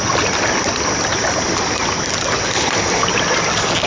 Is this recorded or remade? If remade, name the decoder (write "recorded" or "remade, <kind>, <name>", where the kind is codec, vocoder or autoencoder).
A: recorded